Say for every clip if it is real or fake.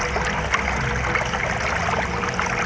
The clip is real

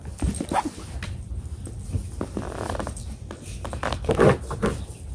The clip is real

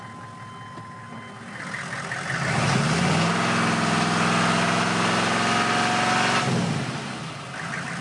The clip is real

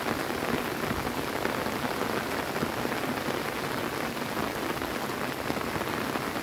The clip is real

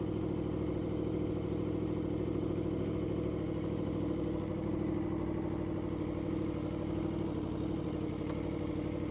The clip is real